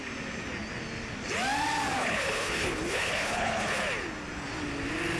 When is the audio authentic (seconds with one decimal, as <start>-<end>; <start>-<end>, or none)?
0.0-2.0; 3.8-5.2